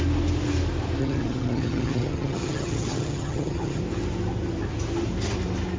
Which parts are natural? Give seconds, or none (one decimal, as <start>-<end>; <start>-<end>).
0.0-1.0; 3.8-5.8